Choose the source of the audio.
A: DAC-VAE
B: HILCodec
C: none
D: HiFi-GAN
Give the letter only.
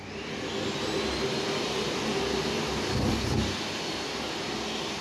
C